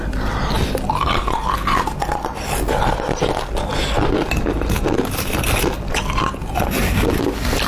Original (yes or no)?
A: yes